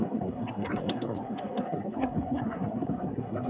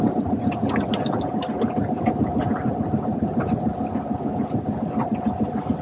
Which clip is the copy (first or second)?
first